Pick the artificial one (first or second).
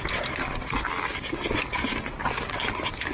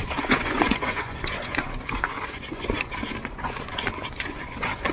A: second